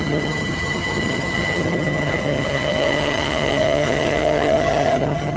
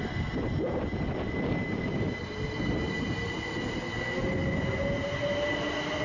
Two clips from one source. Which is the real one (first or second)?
second